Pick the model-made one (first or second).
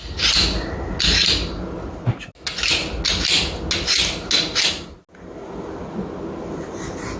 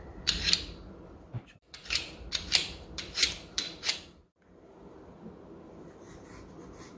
second